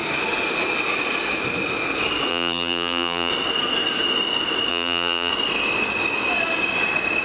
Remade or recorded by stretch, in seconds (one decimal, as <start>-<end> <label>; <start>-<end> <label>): 0.0-2.3 recorded; 2.3-3.3 remade; 3.3-4.7 recorded; 4.7-5.3 remade; 5.3-7.2 recorded